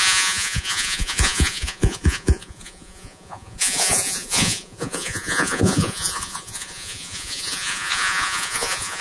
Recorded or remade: remade